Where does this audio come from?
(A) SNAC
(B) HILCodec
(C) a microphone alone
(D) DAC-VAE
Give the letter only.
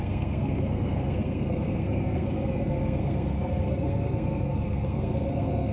A